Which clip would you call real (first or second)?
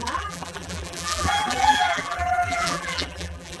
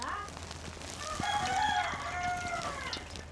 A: second